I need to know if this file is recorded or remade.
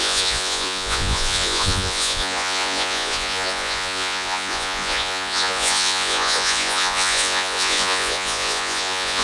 remade